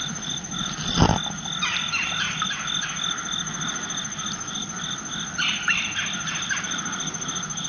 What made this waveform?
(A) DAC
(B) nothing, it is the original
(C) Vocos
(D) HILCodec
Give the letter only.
B